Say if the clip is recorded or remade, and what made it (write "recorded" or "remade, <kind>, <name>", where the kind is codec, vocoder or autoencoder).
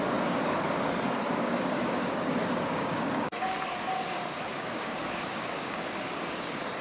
remade, codec, DAC